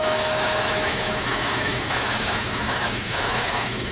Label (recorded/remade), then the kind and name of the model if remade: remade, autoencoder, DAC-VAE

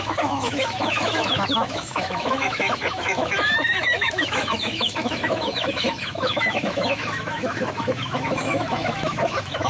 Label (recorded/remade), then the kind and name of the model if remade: remade, autoencoder, DAC-VAE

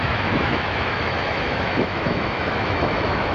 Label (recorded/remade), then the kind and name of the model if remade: remade, autoencoder, DAC-VAE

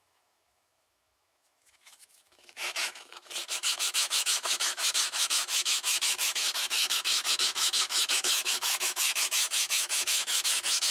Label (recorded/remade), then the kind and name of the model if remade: remade, autoencoder, DAC-VAE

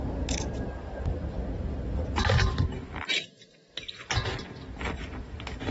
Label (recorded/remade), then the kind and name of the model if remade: recorded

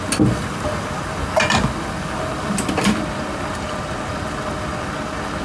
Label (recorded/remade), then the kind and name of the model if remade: recorded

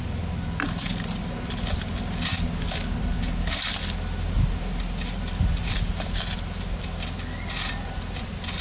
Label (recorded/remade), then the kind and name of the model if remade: recorded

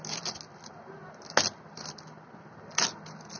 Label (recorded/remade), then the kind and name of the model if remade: recorded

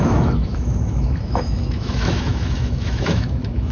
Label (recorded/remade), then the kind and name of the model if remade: remade, autoencoder, DAC-VAE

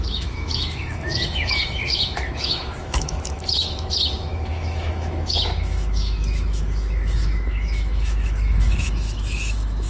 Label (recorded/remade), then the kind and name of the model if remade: remade, autoencoder, DAC-VAE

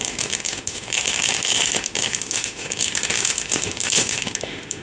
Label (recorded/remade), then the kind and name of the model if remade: remade, autoencoder, DAC-VAE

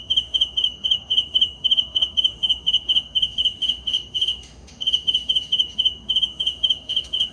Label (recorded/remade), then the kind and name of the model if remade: remade, autoencoder, DAC-VAE